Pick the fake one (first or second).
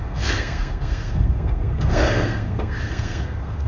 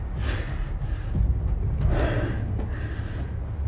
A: first